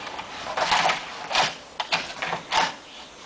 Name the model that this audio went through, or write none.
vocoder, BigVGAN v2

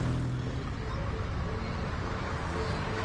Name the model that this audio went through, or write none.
none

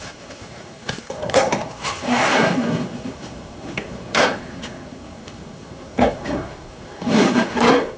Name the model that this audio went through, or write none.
codec, SNAC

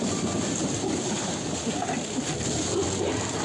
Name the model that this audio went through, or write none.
none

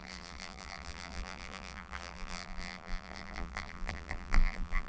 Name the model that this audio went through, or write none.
vocoder, BigVGAN v2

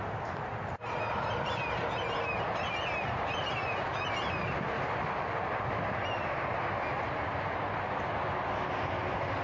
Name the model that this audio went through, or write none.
none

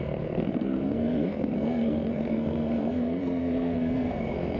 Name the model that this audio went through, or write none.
codec, SNAC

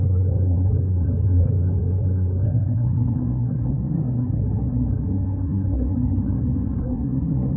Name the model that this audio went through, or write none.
codec, SNAC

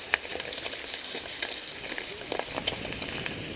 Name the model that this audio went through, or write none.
none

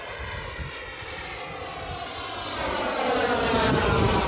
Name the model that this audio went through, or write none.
none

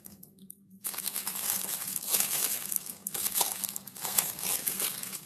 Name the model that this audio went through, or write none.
codec, SNAC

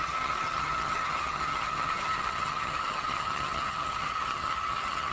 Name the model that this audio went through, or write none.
vocoder, HiFi-GAN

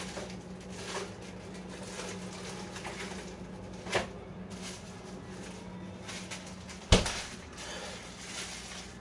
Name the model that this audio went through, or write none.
none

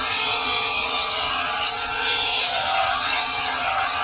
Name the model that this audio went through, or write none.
vocoder, WaveNeXt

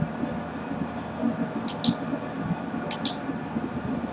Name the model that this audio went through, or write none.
none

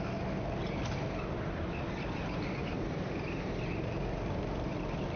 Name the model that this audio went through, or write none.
none